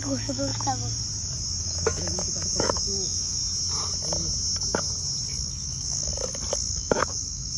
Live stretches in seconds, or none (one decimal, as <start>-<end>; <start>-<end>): 0.5-1.6; 3.4-5.5; 6.1-6.7